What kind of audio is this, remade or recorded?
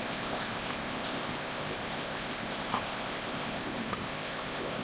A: remade